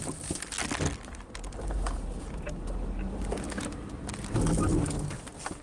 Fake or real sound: real